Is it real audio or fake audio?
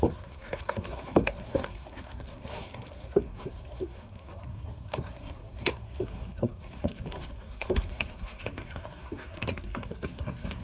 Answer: fake